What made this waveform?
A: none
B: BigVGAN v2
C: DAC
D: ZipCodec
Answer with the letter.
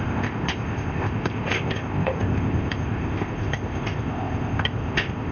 D